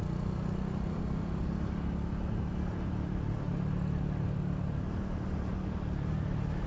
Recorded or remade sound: recorded